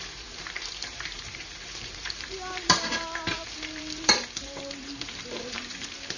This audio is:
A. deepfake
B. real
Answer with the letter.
A